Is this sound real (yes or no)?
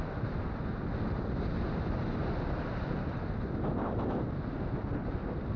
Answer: yes